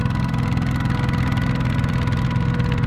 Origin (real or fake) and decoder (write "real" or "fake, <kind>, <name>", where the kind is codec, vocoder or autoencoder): real